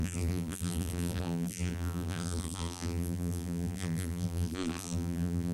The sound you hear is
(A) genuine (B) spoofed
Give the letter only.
B